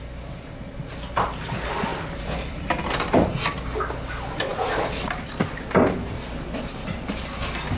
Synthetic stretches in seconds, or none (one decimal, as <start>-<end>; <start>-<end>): 1.9-3.4